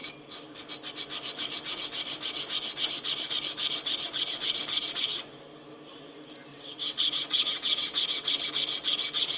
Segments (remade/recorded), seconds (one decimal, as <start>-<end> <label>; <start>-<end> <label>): 0.0-6.5 recorded; 6.5-8.5 remade; 8.5-9.4 recorded